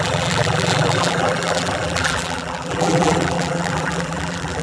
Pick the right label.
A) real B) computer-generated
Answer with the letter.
B